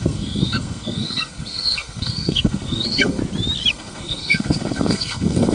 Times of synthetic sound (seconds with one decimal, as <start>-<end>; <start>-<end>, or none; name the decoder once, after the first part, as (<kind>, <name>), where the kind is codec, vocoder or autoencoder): 0.0-3.2 (codec, SNAC); 3.7-5.5